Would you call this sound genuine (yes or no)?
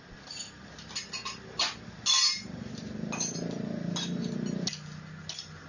yes